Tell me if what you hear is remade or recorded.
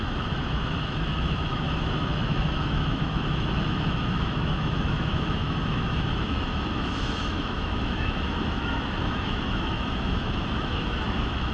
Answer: remade